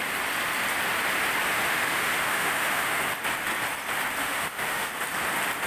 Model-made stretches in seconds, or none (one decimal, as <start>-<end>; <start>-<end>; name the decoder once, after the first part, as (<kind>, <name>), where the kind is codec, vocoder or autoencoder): 1.7-3.0 (autoencoder, DAC-VAE); 4.2-4.9